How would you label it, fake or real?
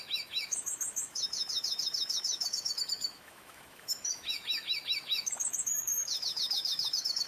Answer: fake